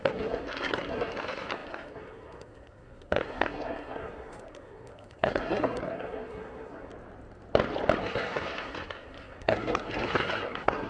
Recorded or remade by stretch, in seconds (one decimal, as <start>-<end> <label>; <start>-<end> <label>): 0.0-6.9 remade; 6.9-8.0 recorded; 8.0-10.9 remade